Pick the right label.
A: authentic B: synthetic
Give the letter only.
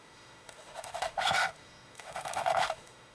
B